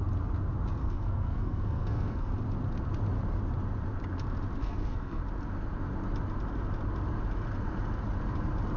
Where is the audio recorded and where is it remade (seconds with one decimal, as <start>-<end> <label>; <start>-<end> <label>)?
0.0-0.8 recorded; 0.8-2.3 remade; 2.3-4.6 recorded; 4.6-5.2 remade; 5.2-8.8 recorded